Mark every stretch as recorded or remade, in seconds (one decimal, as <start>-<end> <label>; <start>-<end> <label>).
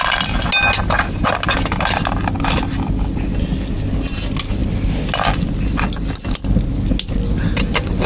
0.0-8.1 recorded